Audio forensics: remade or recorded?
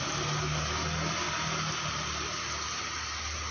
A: remade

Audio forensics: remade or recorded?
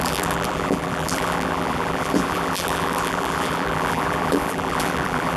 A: remade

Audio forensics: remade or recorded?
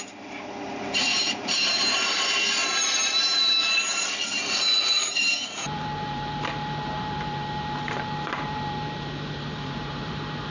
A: remade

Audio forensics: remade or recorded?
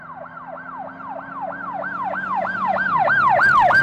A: recorded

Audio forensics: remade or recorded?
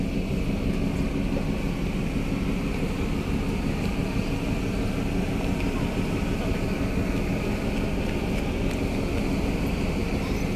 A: recorded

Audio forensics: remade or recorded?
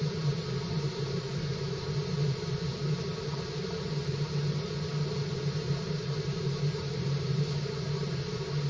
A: remade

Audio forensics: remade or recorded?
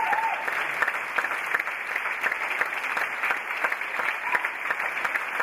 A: recorded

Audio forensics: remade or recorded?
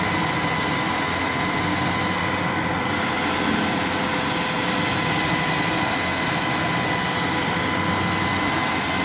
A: recorded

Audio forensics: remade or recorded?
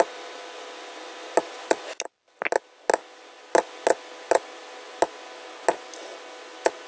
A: recorded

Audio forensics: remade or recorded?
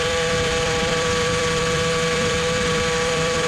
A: remade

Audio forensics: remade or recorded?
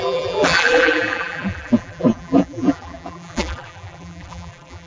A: remade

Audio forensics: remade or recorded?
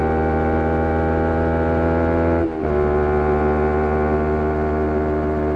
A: recorded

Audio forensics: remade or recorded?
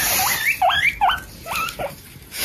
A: remade